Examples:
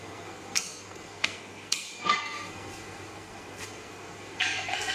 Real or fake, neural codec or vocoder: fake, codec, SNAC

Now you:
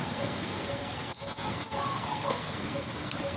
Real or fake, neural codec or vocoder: fake, codec, SNAC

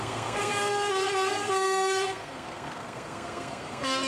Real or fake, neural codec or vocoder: fake, codec, SNAC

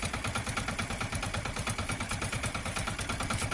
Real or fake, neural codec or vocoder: real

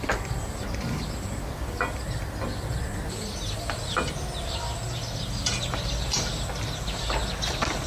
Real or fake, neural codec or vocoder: real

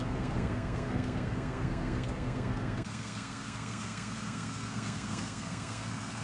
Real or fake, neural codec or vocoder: fake, codec, SNAC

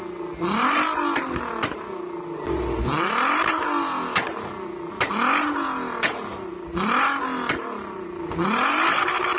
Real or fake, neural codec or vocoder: real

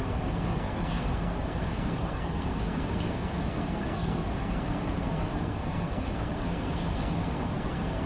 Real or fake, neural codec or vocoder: fake, codec, SNAC